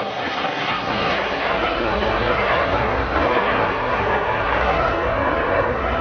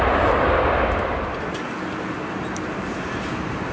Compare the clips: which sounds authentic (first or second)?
second